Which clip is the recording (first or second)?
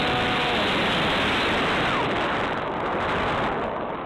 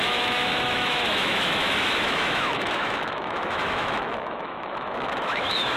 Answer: first